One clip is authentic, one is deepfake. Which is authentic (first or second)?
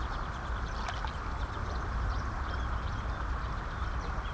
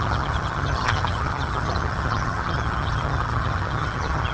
first